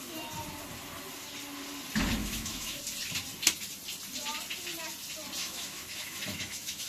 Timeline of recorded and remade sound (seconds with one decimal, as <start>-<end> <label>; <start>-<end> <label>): 0.0-2.2 recorded; 2.2-2.8 remade; 2.8-5.4 recorded; 5.4-6.9 remade